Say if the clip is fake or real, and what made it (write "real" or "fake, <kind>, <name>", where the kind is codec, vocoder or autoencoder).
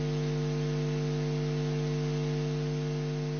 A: real